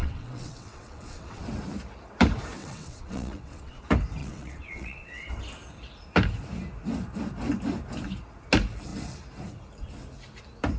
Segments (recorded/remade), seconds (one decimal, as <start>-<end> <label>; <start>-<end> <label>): 0.0-1.4 remade; 1.4-2.6 recorded; 2.6-3.8 remade; 3.8-4.2 recorded; 4.2-5.3 remade; 5.3-10.8 recorded